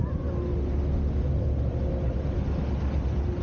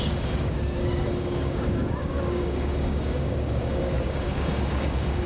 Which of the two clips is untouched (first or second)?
first